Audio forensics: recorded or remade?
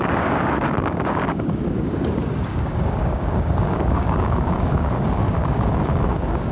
remade